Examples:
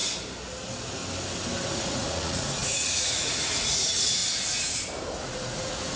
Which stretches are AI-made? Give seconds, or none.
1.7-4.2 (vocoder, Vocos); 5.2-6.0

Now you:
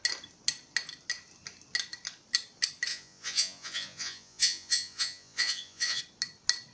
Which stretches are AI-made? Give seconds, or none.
2.9-6.0 (vocoder, Vocos)

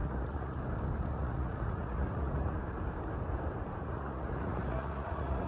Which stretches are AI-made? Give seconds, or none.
0.0-0.6 (vocoder, Vocos); 1.1-2.6; 3.8-5.5

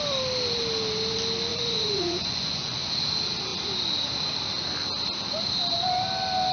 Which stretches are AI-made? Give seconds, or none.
1.5-2.9 (vocoder, Vocos)